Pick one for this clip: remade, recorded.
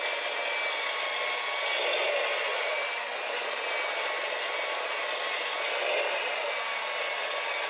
recorded